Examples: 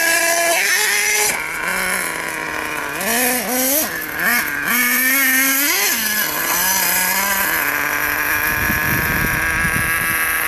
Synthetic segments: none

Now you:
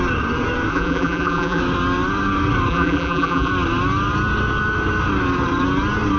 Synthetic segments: 0.7-1.6 (vocoder, BigVGAN v2); 2.7-3.5

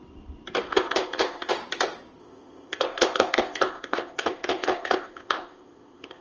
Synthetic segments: 0.7-1.5 (codec, ZipCodec); 2.2-6.2

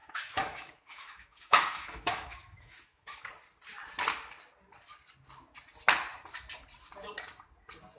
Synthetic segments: 0.0-3.3 (autoencoder, DAC-VAE)

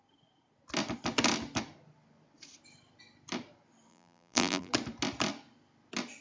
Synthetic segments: 3.9-4.7 (vocoder, BigVGAN v2)